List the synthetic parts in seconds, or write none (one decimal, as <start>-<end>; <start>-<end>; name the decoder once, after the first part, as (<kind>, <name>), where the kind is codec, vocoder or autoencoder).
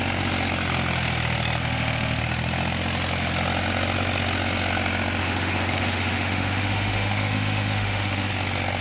1.6-2.2 (autoencoder, DAC-VAE); 5.2-8.3